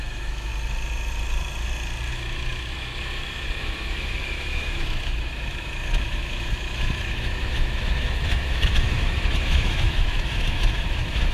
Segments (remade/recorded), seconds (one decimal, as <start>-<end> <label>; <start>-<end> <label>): 0.0-0.5 remade; 0.5-2.1 recorded; 2.1-11.3 remade